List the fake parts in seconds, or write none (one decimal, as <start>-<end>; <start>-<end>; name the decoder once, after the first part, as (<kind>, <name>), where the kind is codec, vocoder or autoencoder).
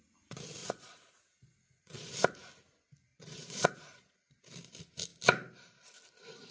0.6-2.1 (vocoder, Vocos); 3.1-4.4